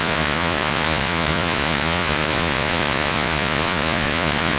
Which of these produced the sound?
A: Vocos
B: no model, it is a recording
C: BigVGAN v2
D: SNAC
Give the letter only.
A